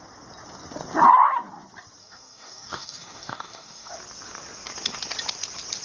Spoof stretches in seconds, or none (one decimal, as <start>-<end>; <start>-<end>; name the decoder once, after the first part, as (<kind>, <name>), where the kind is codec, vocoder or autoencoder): 2.0-3.9 (codec, DAC)

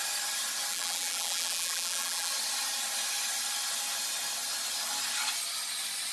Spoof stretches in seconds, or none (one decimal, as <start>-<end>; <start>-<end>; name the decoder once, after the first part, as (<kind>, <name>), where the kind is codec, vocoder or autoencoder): 0.7-2.3 (vocoder, BigVGAN v2)